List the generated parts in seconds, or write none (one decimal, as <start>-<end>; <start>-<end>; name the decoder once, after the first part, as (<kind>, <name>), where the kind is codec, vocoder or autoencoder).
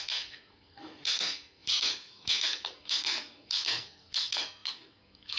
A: 0.0-5.4 (codec, SNAC)